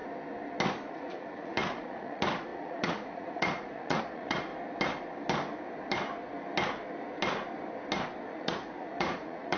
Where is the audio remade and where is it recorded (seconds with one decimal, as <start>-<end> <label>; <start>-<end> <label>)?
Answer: 0.0-0.9 recorded; 0.9-4.5 remade; 4.5-8.3 recorded; 8.3-9.6 remade